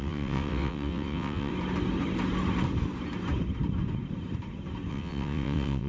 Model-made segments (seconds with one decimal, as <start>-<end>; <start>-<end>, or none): 0.0-1.5; 4.9-5.9